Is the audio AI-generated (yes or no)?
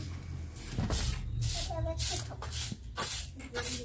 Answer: no